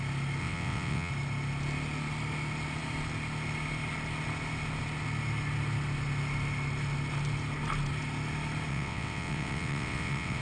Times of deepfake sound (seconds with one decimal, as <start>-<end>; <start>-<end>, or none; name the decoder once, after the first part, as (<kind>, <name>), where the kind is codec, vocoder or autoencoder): 0.4-1.1 (vocoder, WaveNeXt); 8.7-10.4